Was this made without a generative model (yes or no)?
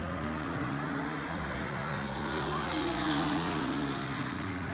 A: no